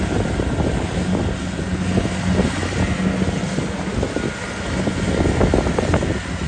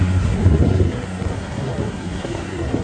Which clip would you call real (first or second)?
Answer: first